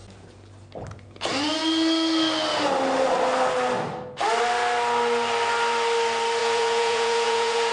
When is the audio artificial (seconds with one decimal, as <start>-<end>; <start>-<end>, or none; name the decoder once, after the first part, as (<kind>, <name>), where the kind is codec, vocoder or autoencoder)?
6.4-7.7 (vocoder, Vocos)